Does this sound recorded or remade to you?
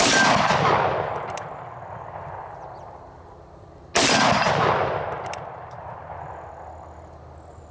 recorded